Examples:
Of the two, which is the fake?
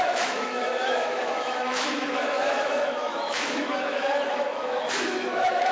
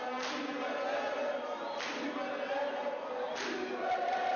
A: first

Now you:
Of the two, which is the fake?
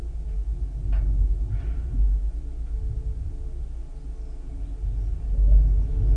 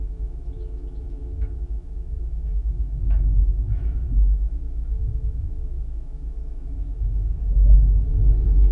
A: second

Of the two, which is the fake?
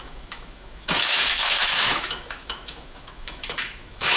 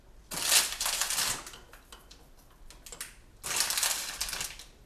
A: first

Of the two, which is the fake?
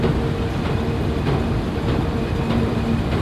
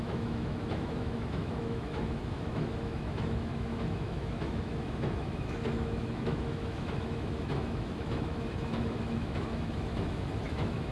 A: second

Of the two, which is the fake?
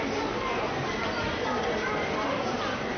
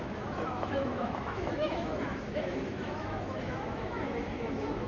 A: second